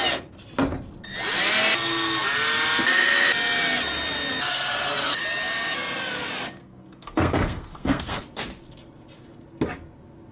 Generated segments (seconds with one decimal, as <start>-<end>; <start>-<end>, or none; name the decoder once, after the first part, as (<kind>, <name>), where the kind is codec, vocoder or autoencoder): 4.5-5.2 (codec, SNAC); 6.6-8.2